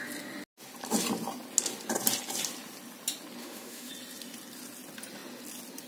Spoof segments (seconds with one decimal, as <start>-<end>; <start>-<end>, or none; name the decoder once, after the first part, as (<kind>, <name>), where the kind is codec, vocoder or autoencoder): 3.4-3.9 (autoencoder, DAC-VAE)